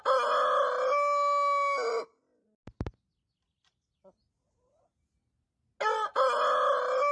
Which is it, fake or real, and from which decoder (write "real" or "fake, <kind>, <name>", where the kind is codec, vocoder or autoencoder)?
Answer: real